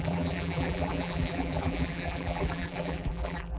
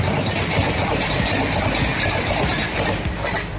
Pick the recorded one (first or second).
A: second